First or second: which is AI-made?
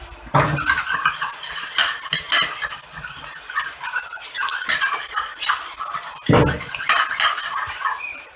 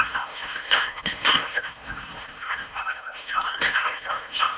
second